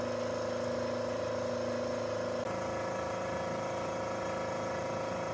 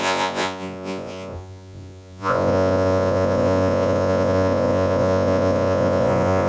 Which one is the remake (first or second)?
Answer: second